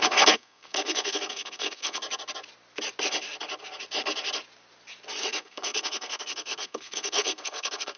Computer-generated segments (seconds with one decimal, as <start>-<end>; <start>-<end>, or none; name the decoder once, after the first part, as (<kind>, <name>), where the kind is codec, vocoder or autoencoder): 0.0-2.0 (codec, SNAC); 5.2-8.0

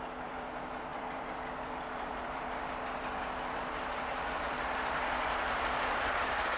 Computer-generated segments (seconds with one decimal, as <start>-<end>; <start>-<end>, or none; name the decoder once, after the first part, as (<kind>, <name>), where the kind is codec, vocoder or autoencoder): 0.0-6.6 (vocoder, BigVGAN v2)

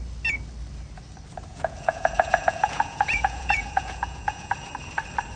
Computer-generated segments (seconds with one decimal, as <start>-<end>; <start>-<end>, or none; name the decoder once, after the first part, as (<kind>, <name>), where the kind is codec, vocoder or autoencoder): 1.5-4.7 (vocoder, Vocos)

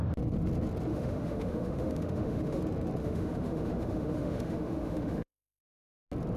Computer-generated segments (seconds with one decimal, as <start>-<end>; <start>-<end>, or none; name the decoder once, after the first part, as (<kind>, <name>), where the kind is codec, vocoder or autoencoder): 0.9-2.6 (autoencoder, DAC-VAE); 3.0-5.6

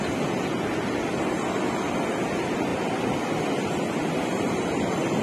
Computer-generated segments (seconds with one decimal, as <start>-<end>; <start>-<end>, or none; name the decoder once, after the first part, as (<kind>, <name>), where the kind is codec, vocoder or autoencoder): none